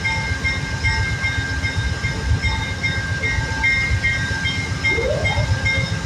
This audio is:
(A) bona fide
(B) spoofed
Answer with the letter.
A